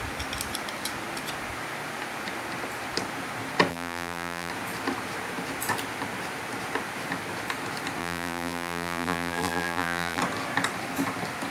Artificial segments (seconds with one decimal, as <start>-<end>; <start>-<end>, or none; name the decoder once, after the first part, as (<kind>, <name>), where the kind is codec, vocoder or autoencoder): 3.7-4.5 (vocoder, BigVGAN v2); 8.0-10.2